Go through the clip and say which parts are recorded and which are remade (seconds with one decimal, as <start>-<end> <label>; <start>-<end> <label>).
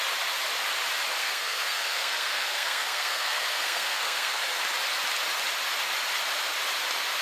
0.0-1.2 recorded; 1.2-4.6 remade; 4.6-7.2 recorded